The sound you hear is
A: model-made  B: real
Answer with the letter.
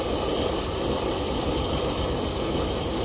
B